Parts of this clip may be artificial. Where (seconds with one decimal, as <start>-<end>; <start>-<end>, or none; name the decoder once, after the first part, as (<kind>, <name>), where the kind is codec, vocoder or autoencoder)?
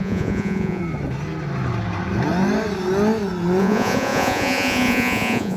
0.0-0.8 (vocoder, Vocos); 3.6-5.6